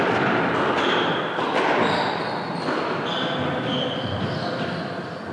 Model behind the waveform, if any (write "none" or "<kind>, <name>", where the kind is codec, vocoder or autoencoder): none